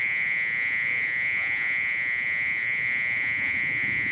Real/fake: fake